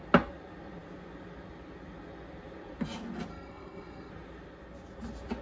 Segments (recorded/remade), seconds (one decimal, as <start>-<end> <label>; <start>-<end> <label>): 0.0-3.3 recorded; 3.3-4.1 remade; 4.1-5.4 recorded

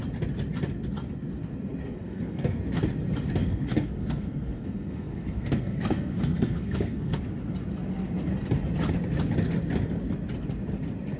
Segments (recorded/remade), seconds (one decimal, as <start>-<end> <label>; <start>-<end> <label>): 0.0-1.8 recorded; 1.8-2.6 remade; 2.6-3.4 recorded; 3.4-7.2 remade; 7.2-11.2 recorded

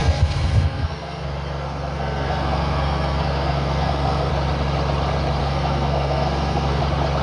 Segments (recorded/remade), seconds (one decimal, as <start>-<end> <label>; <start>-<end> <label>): 0.0-4.3 remade; 4.3-5.4 recorded; 5.4-6.8 remade; 6.8-7.2 recorded

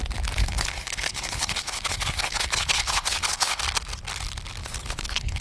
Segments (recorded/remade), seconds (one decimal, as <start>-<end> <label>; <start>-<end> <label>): 0.0-0.4 recorded; 0.4-3.6 remade; 3.6-4.6 recorded; 4.6-5.4 remade

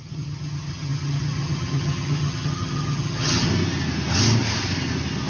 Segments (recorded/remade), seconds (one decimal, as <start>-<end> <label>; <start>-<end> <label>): 0.0-3.5 remade; 3.5-5.3 recorded

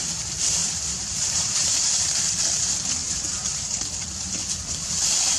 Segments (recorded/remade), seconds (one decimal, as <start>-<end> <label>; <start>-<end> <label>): 0.0-0.6 recorded; 0.6-2.2 remade; 2.2-3.0 recorded; 3.0-3.8 remade; 3.8-5.4 recorded

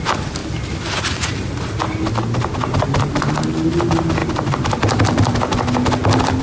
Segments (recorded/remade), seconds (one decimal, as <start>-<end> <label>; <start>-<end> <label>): 0.0-6.4 recorded